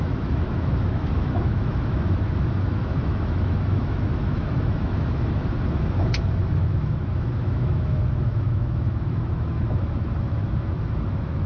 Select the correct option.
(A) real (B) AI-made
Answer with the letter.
B